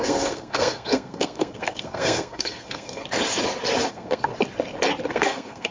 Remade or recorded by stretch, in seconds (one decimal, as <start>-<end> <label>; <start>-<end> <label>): 0.0-3.0 remade; 3.0-3.9 recorded; 3.9-4.3 remade; 4.3-5.1 recorded; 5.1-5.7 remade